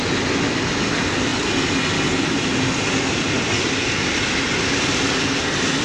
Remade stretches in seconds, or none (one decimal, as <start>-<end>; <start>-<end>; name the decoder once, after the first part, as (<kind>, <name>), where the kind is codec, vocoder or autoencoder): none